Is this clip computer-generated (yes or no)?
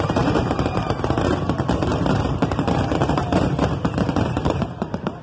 yes